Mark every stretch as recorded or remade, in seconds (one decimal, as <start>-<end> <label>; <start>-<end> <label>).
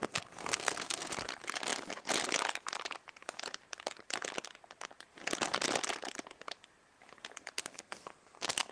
0.0-1.1 remade; 1.1-7.6 recorded; 7.6-8.7 remade